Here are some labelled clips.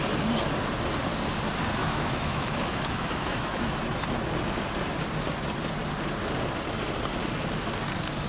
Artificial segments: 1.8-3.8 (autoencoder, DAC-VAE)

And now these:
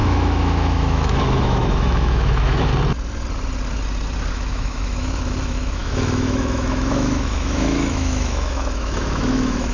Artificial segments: 0.0-2.7 (autoencoder, DAC-VAE); 4.3-9.7

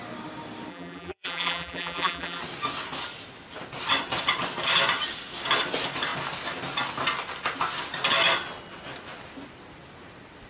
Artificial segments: 0.7-2.4 (vocoder, BigVGAN v2)

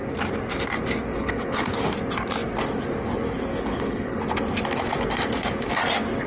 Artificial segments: 1.1-1.7 (codec, HILCodec); 3.5-4.2

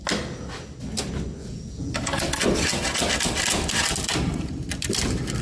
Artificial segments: 1.4-1.9 (vocoder, Vocos)